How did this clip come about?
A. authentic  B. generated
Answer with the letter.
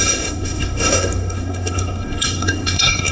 B